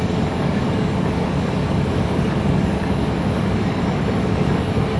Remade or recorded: remade